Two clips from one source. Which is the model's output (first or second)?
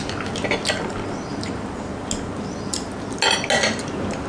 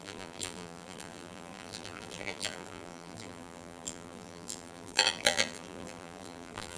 second